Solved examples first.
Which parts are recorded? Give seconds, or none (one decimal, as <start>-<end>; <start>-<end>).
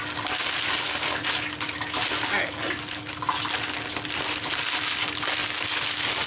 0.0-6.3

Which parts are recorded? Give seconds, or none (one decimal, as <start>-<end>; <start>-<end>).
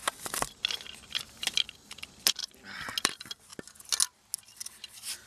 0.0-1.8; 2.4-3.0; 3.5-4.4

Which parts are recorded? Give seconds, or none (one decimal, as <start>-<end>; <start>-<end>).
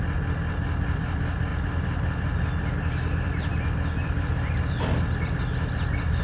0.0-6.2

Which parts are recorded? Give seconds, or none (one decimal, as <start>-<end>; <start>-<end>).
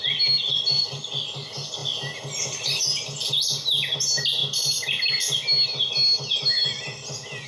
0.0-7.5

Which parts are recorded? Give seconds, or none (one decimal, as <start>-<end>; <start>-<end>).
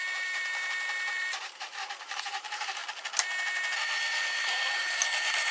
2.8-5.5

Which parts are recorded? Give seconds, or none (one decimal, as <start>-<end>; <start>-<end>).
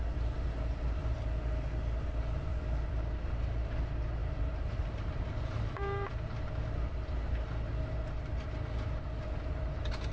0.0-4.2; 6.2-10.1